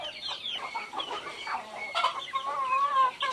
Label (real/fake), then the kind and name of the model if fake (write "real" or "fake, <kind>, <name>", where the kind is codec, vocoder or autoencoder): fake, vocoder, BigVGAN v2